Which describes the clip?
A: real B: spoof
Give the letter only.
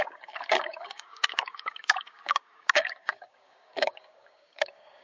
B